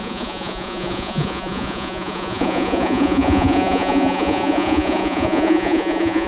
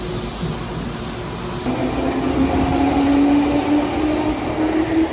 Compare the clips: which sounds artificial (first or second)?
first